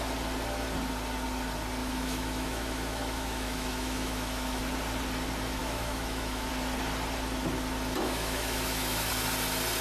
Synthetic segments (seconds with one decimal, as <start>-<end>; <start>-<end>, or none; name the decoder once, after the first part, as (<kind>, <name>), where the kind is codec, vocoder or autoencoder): 1.8-4.6 (autoencoder, DAC-VAE); 5.6-6.5; 8.0-9.1